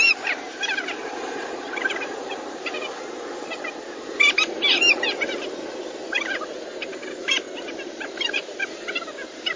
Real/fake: fake